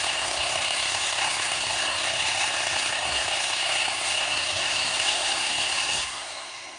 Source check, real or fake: fake